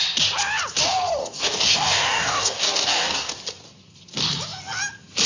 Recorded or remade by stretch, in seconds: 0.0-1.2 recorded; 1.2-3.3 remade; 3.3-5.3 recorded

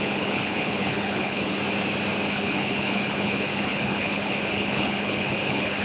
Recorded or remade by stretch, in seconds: 0.0-1.6 remade; 1.6-2.3 recorded; 2.3-5.8 remade